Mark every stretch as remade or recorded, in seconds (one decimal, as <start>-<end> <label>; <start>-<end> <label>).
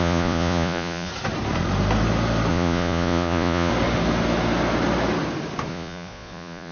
0.0-1.1 remade; 1.1-2.5 recorded; 2.5-3.7 remade; 3.7-5.7 recorded; 5.7-6.7 remade